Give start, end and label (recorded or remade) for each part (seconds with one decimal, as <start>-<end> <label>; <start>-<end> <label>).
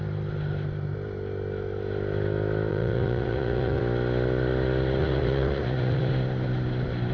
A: 0.0-2.7 recorded; 2.7-3.8 remade; 3.8-5.0 recorded; 5.0-6.1 remade; 6.1-7.1 recorded